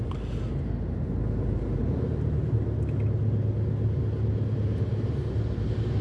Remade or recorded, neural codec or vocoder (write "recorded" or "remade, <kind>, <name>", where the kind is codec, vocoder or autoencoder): recorded